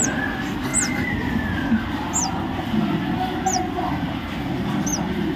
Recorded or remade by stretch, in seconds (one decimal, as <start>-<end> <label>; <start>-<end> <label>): 0.0-5.4 recorded